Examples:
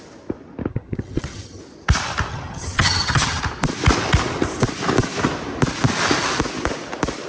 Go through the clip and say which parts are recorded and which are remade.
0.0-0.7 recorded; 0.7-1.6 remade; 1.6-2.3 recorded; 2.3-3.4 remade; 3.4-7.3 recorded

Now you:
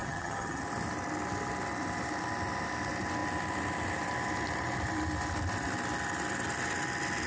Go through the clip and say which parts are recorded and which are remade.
0.0-0.6 remade; 0.6-7.3 recorded

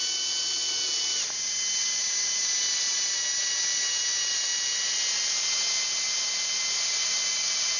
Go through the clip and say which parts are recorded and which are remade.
0.0-7.8 recorded